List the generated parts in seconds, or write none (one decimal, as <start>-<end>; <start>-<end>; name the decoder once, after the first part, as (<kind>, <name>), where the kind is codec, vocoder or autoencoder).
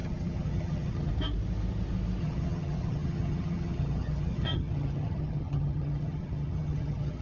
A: 0.0-1.1 (vocoder, HiFi-GAN); 2.2-7.2